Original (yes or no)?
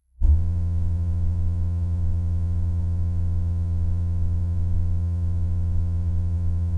no